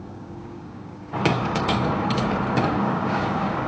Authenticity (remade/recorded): remade